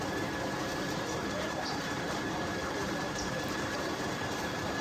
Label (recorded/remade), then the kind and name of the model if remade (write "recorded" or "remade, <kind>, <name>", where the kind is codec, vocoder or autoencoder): remade, vocoder, BigVGAN v2